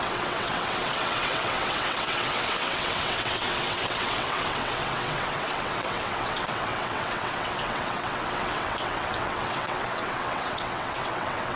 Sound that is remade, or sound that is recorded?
remade